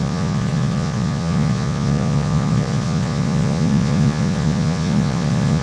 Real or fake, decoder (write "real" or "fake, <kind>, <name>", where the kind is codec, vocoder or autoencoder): fake, vocoder, Vocos